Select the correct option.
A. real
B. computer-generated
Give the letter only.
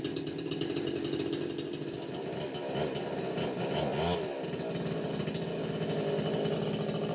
A